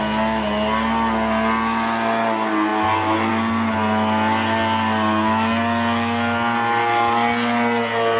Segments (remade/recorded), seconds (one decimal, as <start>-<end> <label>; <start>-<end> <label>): 0.0-8.2 recorded